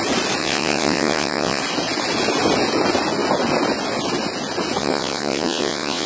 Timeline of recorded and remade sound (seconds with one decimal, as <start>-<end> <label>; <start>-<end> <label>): 0.0-0.4 recorded; 0.4-1.6 remade; 1.6-4.8 recorded; 4.8-6.1 remade